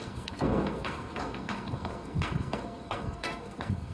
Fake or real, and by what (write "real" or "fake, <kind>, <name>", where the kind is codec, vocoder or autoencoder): fake, codec, SNAC